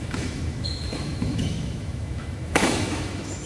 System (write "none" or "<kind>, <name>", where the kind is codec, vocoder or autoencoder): autoencoder, DAC-VAE